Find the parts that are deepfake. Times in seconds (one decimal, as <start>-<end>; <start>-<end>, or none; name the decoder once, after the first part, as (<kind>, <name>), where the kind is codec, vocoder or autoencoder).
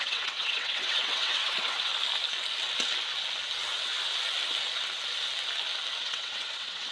0.0-1.9 (vocoder, WaveNeXt); 6.0-6.9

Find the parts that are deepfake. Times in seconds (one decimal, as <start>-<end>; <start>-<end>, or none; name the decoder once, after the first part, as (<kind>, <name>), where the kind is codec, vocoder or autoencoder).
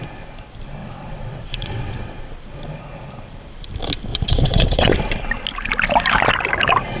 0.8-2.2 (vocoder, WaveNeXt); 4.1-4.9